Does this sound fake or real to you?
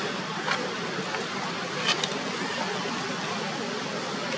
real